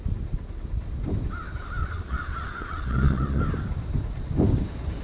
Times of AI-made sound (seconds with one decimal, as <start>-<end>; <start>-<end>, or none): 1.8-3.4